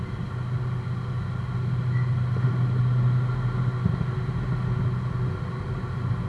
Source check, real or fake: real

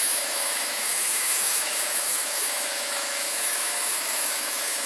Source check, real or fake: fake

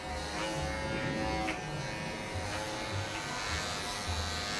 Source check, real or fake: real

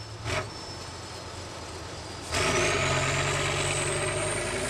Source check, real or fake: real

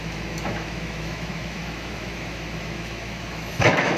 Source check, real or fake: fake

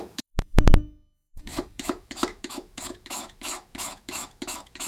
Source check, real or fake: fake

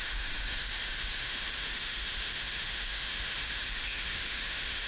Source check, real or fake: fake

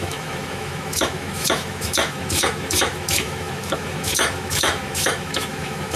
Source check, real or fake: fake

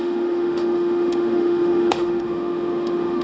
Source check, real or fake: fake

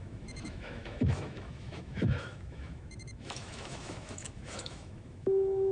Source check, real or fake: fake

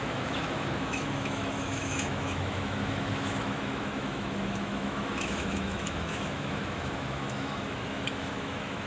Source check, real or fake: fake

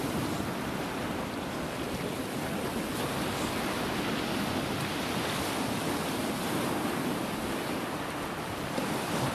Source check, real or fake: real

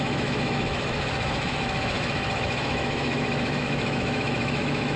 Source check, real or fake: fake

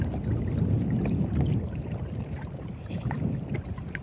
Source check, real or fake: real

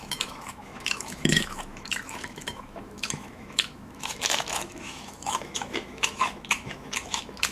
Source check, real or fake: fake